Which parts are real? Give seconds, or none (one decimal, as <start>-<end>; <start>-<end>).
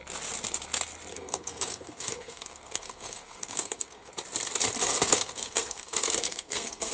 0.0-1.1; 4.1-5.0